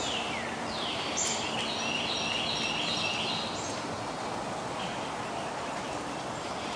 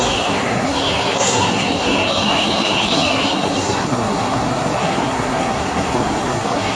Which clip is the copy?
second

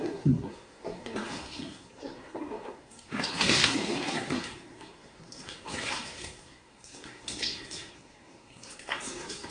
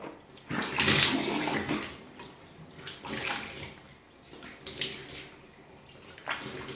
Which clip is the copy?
first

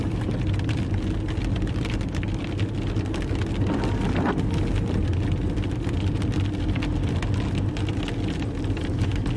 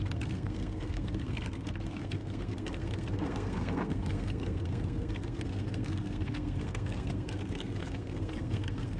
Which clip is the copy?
second